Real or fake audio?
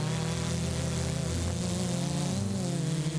real